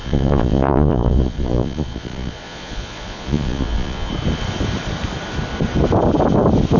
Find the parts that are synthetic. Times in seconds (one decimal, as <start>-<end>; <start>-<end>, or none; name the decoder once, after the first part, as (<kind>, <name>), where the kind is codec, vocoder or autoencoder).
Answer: 0.0-4.1 (vocoder, Vocos)